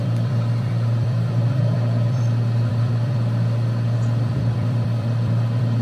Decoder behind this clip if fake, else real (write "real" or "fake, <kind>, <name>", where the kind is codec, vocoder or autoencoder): fake, vocoder, BigVGAN v2